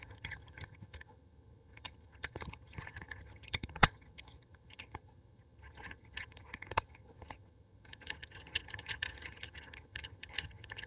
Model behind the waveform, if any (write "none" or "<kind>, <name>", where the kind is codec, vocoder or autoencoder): vocoder, HiFi-GAN